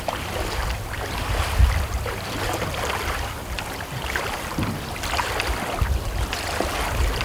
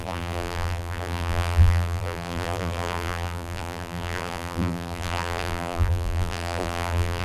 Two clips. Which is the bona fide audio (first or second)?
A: first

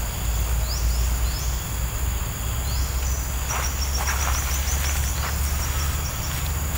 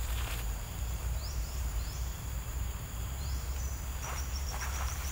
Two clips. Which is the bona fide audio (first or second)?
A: first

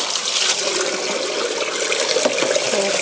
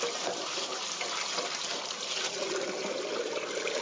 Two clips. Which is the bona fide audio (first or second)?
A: first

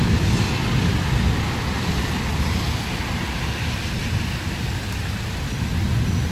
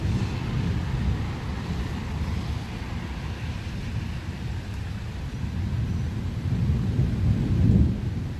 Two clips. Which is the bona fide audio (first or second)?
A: first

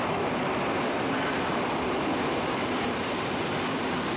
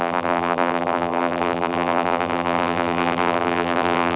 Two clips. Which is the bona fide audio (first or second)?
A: first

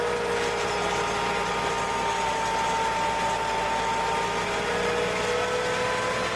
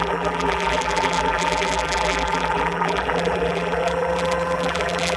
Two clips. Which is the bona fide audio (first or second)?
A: first